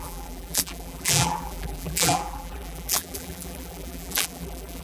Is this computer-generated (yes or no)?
yes